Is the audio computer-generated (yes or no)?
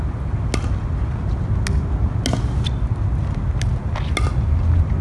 no